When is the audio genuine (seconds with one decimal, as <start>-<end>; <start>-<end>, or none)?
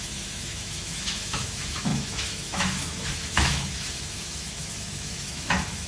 none